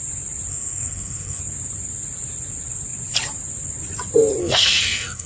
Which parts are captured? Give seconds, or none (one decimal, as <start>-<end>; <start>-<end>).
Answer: 0.0-0.5; 1.4-4.4